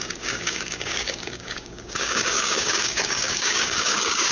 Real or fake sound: fake